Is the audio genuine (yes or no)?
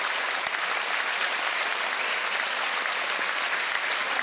yes